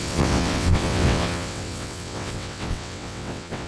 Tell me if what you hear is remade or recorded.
remade